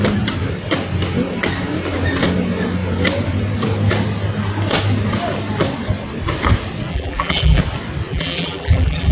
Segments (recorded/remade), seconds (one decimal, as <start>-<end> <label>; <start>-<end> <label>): 0.0-6.9 recorded; 6.9-7.6 remade; 7.6-8.1 recorded; 8.1-9.1 remade